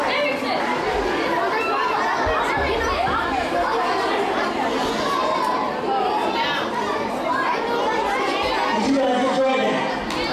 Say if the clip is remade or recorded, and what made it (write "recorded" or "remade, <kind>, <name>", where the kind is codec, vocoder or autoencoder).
recorded